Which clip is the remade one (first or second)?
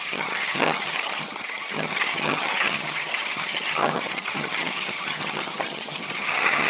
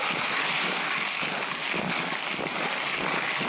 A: first